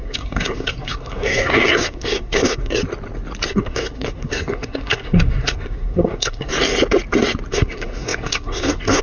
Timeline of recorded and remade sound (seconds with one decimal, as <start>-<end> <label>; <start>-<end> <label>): 0.0-2.8 remade; 2.8-3.5 recorded; 3.5-6.5 remade; 6.5-7.5 recorded; 7.5-9.0 remade